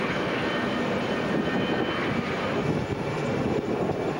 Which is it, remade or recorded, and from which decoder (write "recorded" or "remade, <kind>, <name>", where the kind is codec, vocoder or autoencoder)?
recorded